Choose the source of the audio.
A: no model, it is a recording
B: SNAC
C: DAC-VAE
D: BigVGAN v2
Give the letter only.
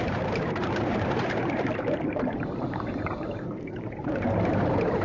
D